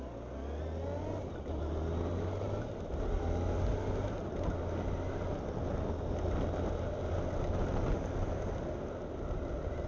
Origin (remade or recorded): recorded